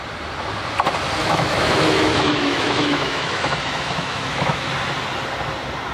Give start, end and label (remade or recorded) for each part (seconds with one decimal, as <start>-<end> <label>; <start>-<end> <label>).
0.0-1.2 recorded; 1.2-4.7 remade; 4.7-5.9 recorded